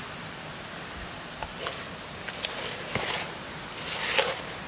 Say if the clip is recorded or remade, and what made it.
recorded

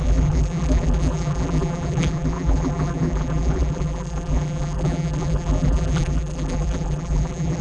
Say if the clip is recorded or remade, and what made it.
remade, vocoder, BigVGAN v2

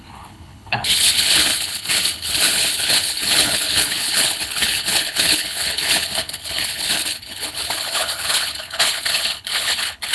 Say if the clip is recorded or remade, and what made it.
remade, codec, HILCodec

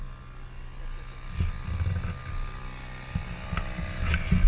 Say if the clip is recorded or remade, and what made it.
recorded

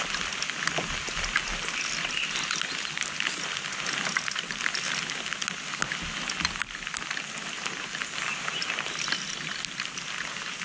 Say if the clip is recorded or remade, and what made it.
recorded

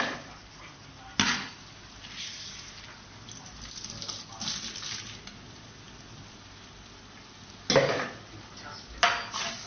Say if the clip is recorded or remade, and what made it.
recorded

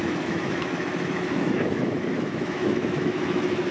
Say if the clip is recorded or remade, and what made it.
remade, autoencoder, DAC-VAE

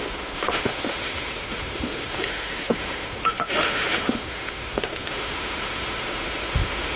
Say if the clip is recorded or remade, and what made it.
remade, autoencoder, DAC-VAE